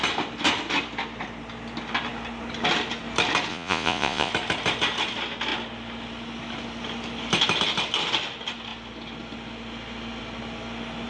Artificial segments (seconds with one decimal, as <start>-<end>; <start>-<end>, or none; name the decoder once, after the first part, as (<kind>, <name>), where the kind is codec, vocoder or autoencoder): 3.5-4.3 (vocoder, Vocos)

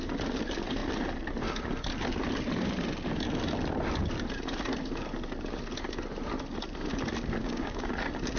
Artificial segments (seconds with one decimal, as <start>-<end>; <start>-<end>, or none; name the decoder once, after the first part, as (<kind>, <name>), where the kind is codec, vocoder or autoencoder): 7.4-7.9 (codec, DAC)

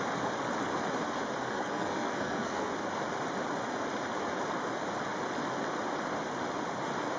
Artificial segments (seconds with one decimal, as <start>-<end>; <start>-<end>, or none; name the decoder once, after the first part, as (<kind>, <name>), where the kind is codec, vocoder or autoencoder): 1.4-2.7 (codec, SNAC)

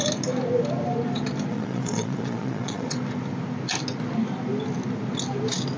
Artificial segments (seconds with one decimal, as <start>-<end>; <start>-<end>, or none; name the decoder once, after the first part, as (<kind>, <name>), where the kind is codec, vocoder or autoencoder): 1.5-2.9 (vocoder, Vocos)

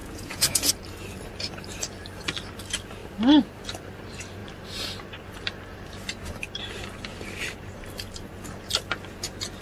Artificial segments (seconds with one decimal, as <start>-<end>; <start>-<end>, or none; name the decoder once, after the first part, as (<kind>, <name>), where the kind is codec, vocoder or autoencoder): 0.0-0.7 (vocoder, Vocos)

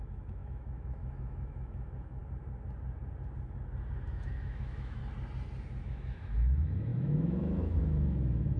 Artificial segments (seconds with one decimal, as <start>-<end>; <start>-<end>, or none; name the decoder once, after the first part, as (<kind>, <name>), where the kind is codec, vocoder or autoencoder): 0.0-2.2 (autoencoder, DAC-VAE); 4.1-5.0; 5.8-8.6

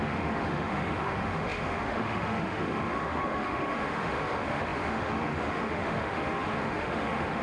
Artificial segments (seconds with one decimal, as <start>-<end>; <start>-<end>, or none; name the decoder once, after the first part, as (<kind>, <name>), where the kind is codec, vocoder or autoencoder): 0.0-7.4 (autoencoder, DAC-VAE)